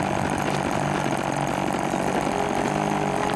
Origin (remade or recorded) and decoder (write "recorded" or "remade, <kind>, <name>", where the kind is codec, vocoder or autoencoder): recorded